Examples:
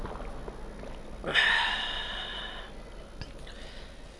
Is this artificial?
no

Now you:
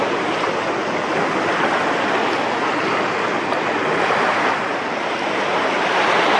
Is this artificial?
no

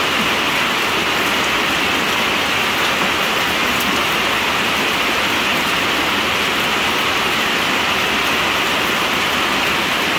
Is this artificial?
no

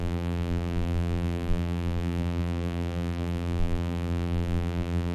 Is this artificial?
yes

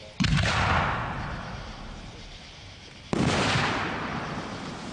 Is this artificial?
no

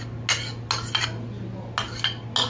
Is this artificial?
no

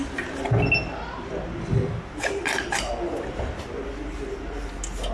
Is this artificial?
no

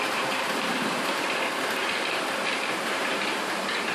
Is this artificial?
yes